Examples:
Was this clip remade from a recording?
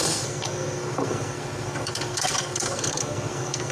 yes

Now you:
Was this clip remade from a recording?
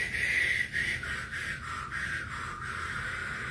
no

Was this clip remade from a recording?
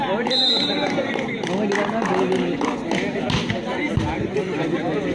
no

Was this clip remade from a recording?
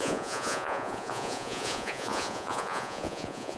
yes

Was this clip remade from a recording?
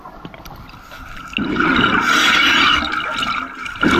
no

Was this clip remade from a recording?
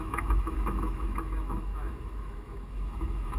yes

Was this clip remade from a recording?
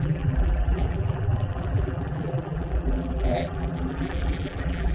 yes